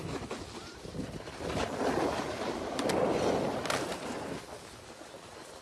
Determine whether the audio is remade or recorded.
recorded